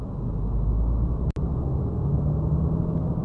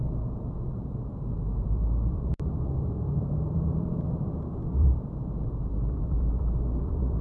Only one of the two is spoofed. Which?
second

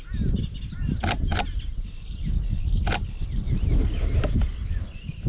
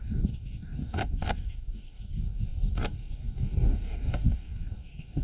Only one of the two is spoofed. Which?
second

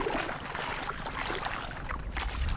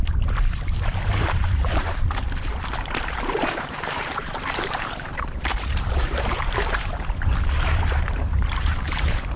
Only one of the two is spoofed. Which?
second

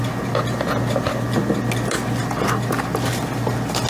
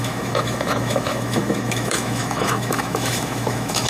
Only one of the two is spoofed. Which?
second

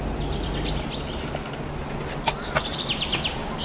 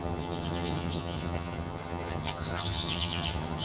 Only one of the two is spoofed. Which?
second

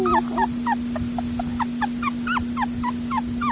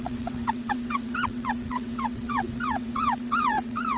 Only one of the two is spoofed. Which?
second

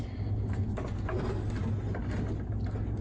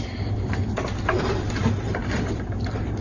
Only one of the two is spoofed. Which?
second